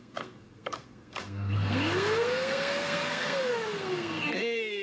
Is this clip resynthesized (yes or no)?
yes